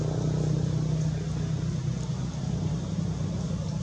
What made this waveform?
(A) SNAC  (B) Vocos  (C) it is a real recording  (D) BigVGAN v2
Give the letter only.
C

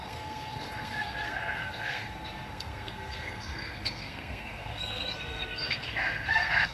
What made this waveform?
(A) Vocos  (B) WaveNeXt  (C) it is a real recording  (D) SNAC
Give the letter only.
D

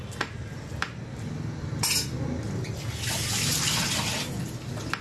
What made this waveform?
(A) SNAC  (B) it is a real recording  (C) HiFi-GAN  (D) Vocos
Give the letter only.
B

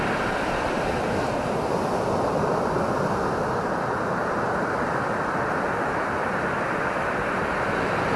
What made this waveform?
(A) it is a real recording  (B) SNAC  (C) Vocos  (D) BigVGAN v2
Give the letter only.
A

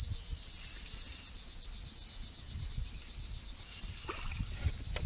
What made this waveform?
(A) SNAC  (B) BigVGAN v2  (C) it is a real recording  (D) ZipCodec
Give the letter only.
C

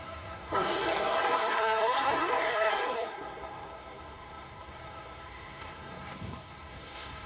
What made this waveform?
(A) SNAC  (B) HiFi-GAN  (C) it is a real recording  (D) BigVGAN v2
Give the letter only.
A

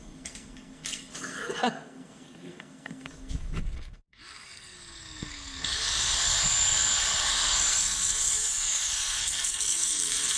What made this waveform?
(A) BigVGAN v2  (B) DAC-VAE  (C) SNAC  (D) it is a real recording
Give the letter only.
C